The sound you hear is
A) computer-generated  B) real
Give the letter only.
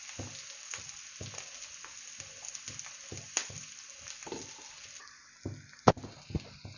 B